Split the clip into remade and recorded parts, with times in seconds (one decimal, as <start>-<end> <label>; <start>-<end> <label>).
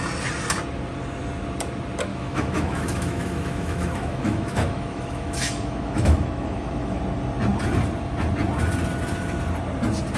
0.0-2.1 recorded; 2.1-7.0 remade; 7.0-10.2 recorded